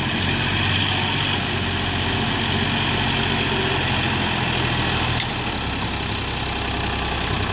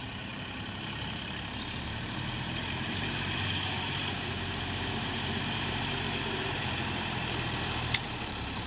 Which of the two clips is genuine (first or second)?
first